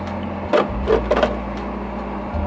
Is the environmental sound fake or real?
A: real